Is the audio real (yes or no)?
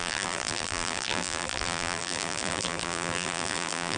no